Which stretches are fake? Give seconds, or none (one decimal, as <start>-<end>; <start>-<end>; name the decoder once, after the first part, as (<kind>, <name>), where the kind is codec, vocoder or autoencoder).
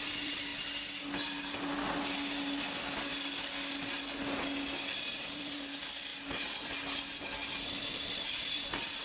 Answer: 0.0-0.5 (vocoder, BigVGAN v2); 2.6-3.1; 5.3-6.1; 8.4-9.0